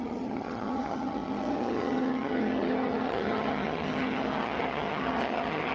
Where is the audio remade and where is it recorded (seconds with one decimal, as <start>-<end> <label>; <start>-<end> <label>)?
0.0-5.7 remade

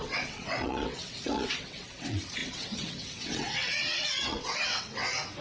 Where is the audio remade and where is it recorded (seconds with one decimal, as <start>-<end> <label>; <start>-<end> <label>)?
0.0-5.4 remade

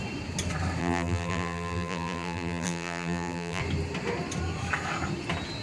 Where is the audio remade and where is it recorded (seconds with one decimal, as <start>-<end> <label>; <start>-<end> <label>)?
0.0-0.8 recorded; 0.8-3.6 remade; 3.6-5.6 recorded

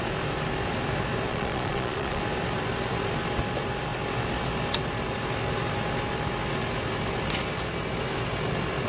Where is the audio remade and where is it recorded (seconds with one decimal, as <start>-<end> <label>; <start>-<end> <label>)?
0.0-1.3 recorded; 1.3-2.2 remade; 2.2-8.9 recorded

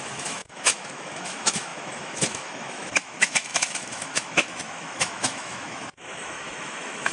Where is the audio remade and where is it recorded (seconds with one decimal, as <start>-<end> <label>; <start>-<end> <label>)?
0.0-7.1 remade